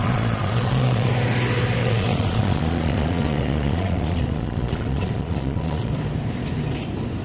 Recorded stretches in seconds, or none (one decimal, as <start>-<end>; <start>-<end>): 1.1-1.8; 5.9-7.2